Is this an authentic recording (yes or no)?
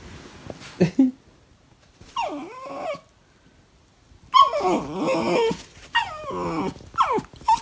yes